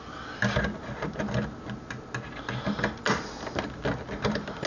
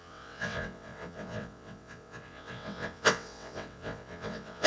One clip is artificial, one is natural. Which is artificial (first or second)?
second